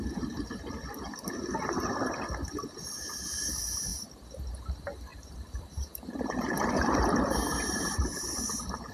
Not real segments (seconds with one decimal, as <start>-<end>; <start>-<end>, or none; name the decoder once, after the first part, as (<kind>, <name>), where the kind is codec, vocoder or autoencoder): 5.1-8.1 (vocoder, BigVGAN v2)